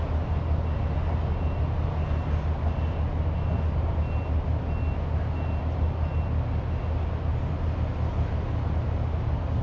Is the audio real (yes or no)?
yes